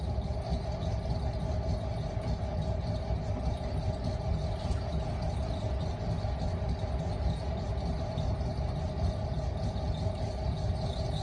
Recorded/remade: recorded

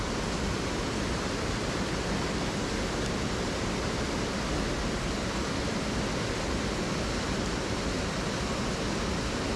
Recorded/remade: recorded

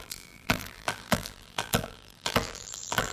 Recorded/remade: remade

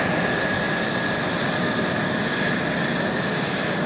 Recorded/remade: recorded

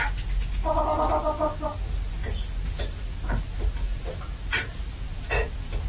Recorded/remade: recorded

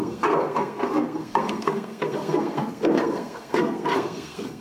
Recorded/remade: remade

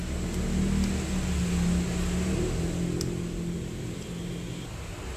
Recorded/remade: recorded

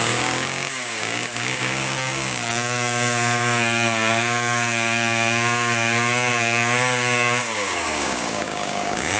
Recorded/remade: remade